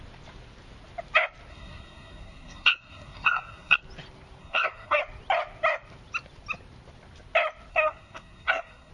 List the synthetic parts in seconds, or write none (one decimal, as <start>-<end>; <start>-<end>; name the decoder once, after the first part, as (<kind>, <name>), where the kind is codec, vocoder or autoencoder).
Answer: 1.5-3.8 (codec, SNAC); 4.4-5.0; 7.7-8.9